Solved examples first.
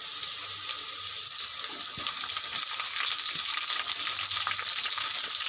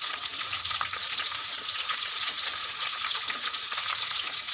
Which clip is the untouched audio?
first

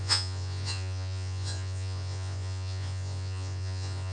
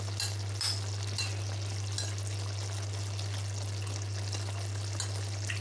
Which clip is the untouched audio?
second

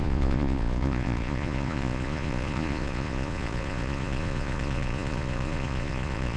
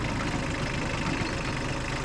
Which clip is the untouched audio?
second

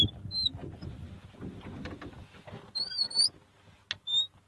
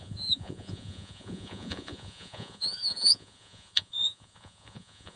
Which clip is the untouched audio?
first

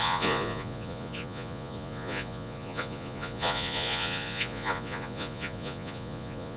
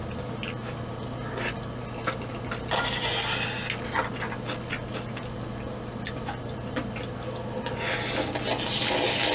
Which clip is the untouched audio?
second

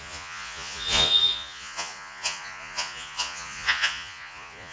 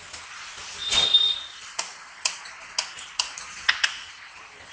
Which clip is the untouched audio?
second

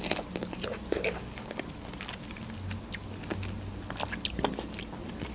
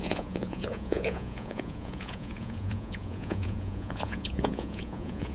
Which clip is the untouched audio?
first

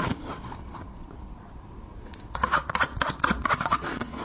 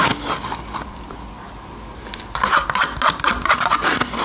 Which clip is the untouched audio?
second